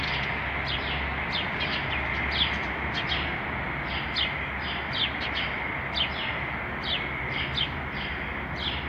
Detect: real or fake real